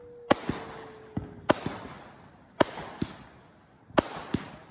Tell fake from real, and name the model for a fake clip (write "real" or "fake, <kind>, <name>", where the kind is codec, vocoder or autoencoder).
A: real